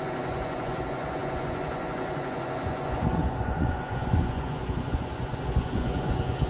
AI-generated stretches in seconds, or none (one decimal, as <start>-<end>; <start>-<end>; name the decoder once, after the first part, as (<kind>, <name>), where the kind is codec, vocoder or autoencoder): 0.0-6.5 (vocoder, Vocos)

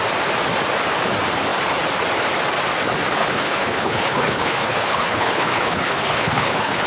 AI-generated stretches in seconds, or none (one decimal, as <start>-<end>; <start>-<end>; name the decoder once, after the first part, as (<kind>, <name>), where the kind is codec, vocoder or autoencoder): 3.2-6.9 (codec, HILCodec)

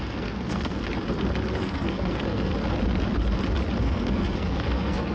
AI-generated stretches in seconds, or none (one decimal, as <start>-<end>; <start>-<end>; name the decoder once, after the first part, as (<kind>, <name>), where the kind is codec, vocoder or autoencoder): 0.0-0.8 (codec, SNAC); 1.5-2.5; 3.8-5.1

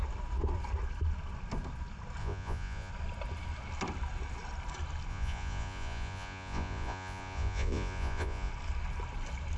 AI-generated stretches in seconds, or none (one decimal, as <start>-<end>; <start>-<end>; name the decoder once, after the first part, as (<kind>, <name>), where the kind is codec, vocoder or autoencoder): 2.2-2.9 (vocoder, Vocos); 5.1-8.5